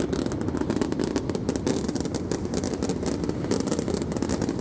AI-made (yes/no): no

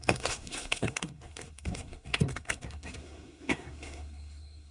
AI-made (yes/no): yes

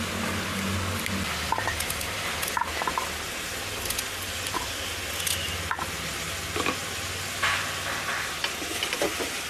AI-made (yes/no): no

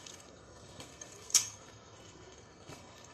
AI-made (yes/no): yes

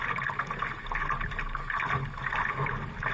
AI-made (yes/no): no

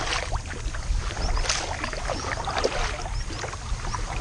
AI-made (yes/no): no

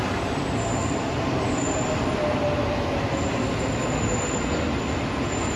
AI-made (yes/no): no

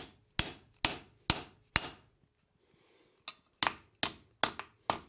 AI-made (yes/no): no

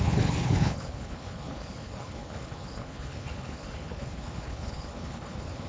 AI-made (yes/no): yes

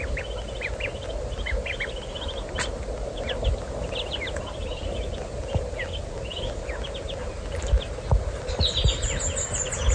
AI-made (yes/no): no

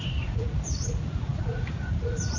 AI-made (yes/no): yes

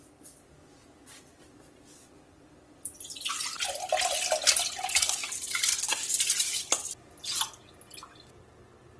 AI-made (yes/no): no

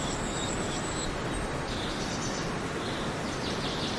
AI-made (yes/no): no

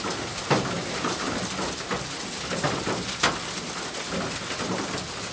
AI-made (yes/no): no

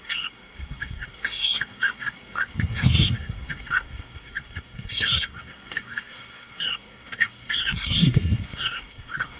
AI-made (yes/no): yes